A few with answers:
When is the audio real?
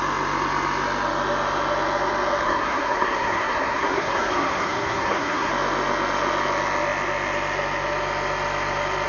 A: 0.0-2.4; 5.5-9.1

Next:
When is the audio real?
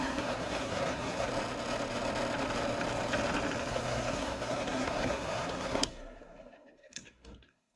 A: 1.3-3.7